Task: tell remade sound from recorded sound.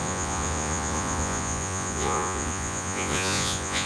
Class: remade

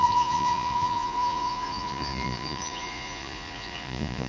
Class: remade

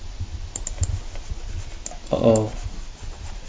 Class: recorded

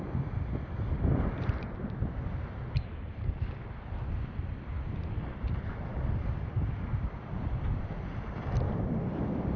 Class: recorded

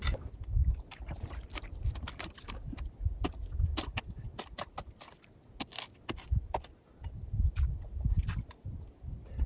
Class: recorded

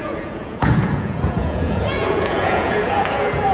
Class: remade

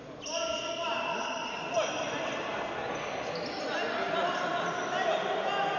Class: recorded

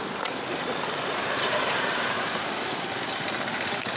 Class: recorded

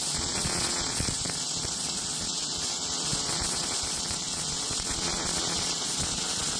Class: remade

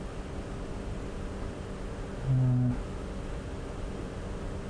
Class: recorded